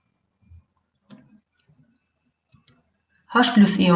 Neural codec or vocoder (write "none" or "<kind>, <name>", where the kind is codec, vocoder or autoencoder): none